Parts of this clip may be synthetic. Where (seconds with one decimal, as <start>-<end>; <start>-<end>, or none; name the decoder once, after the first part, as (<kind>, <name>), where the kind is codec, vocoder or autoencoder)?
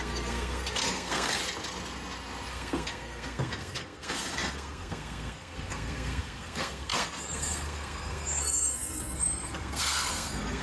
0.0-1.4 (codec, SNAC); 2.5-10.6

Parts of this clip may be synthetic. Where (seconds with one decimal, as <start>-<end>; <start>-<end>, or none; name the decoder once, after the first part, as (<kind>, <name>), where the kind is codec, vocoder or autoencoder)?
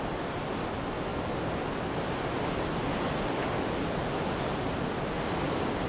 none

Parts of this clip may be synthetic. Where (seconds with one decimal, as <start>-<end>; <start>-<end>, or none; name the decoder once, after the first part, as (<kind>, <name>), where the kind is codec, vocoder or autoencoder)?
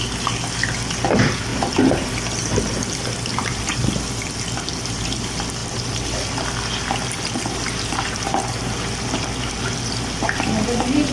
1.5-4.7 (vocoder, BigVGAN v2); 5.6-11.1